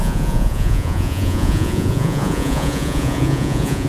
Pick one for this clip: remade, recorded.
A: remade